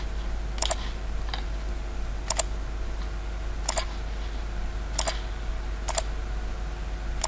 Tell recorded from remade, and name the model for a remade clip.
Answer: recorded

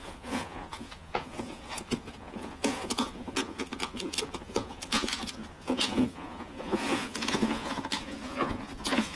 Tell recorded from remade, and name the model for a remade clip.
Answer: remade, vocoder, Vocos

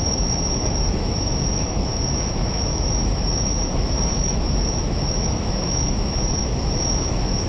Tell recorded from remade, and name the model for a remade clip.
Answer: remade, autoencoder, DAC-VAE